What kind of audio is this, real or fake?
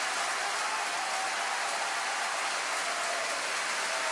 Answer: real